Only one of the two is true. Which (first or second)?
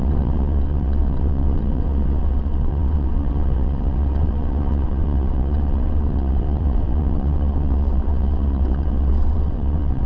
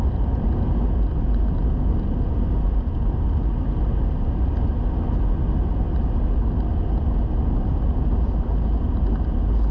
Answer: second